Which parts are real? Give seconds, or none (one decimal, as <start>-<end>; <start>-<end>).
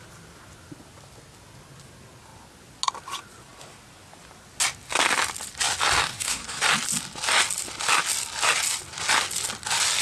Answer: 0.0-6.1; 6.6-10.0